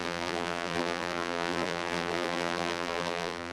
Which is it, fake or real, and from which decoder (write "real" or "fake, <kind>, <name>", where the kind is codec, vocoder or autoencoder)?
fake, vocoder, BigVGAN v2